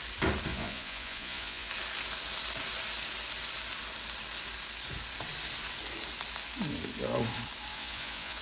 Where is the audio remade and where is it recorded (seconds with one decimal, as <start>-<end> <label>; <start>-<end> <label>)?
0.0-0.5 recorded; 0.5-1.7 remade; 1.7-7.7 recorded; 7.7-8.4 remade